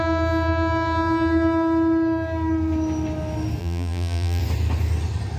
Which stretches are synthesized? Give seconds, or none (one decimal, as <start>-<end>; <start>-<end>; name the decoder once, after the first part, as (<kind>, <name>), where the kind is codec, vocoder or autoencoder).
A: 3.6-4.4 (vocoder, BigVGAN v2)